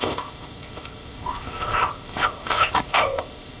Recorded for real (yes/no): no